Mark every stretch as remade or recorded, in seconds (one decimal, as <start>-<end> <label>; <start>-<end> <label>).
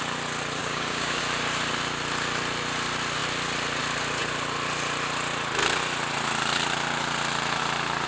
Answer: 0.0-0.6 recorded; 0.6-1.2 remade; 1.2-8.1 recorded